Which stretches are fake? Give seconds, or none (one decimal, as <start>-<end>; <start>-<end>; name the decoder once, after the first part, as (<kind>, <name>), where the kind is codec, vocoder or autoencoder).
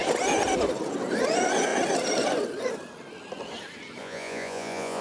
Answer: 4.0-5.0 (vocoder, Vocos)